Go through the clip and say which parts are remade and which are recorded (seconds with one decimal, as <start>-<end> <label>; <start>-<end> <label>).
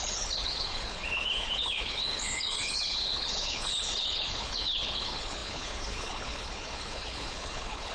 0.0-7.9 remade